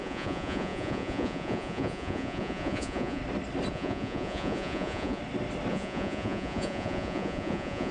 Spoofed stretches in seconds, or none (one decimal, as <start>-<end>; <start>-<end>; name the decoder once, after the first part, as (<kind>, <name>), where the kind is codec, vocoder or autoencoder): 0.0-3.2 (vocoder, Vocos); 3.7-5.2; 5.7-7.9